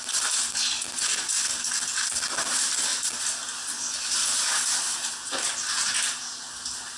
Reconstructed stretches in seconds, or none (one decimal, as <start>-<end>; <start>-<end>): none